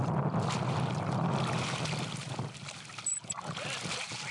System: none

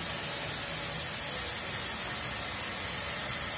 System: none